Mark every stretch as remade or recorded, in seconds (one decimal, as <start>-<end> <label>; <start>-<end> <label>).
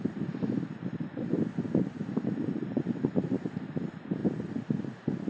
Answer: 0.0-4.2 recorded; 4.2-4.8 remade; 4.8-5.3 recorded